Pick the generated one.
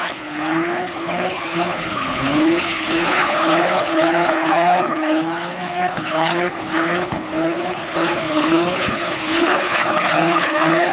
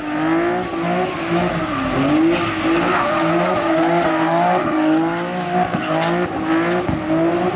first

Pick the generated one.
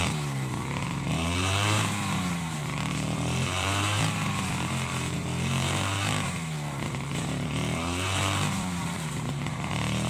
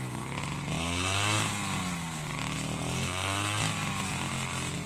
first